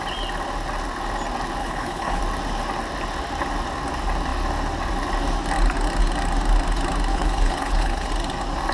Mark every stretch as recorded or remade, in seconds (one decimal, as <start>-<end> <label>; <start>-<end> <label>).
0.0-1.6 recorded; 1.6-2.2 remade; 2.2-7.1 recorded; 7.1-8.1 remade; 8.1-8.7 recorded